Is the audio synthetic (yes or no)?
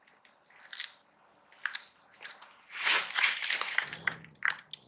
no